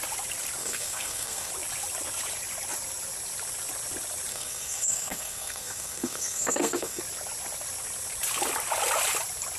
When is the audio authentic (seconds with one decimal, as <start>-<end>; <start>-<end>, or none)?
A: 0.0-0.6; 1.5-4.3; 7.0-9.6